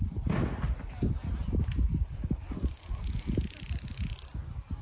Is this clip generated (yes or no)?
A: no